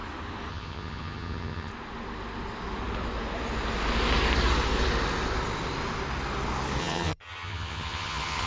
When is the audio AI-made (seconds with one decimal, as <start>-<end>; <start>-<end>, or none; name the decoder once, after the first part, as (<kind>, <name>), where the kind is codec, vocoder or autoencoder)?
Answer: 0.5-1.7 (vocoder, HiFi-GAN); 6.8-8.5